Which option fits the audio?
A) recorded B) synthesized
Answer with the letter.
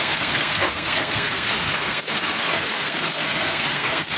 B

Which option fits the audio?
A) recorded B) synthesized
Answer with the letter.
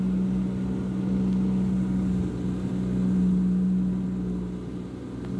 A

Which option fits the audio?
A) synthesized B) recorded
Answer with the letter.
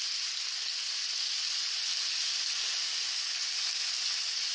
B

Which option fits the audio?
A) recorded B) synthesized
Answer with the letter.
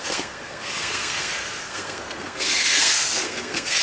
B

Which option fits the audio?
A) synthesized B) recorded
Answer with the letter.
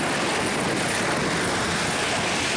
B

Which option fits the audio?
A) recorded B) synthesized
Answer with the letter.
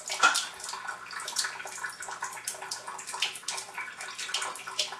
A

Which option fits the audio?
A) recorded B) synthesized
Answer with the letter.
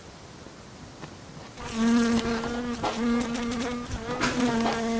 A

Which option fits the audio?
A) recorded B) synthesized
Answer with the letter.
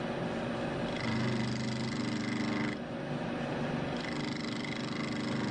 A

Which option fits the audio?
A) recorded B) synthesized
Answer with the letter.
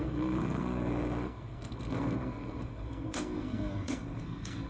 B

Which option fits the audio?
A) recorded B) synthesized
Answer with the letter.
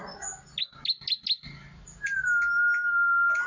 A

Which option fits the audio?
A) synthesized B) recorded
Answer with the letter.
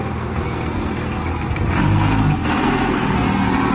A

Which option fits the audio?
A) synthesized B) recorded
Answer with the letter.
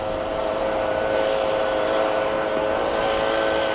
B